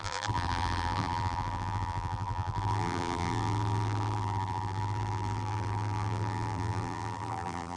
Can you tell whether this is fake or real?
fake